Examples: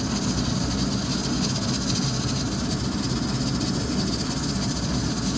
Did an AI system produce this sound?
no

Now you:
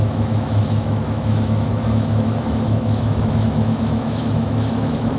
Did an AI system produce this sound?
yes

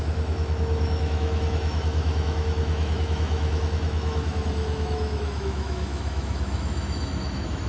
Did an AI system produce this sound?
yes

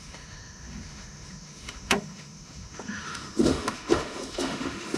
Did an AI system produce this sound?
yes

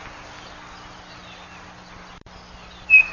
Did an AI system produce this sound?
no